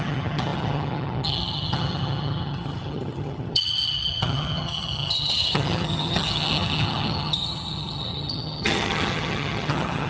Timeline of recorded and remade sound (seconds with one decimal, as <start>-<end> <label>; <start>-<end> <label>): 0.0-10.1 remade